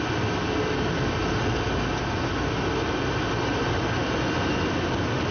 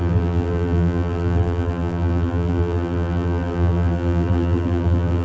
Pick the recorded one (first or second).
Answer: first